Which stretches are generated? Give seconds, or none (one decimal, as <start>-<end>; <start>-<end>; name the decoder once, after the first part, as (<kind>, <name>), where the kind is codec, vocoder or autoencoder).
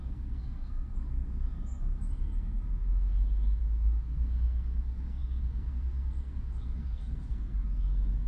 0.0-8.3 (codec, SNAC)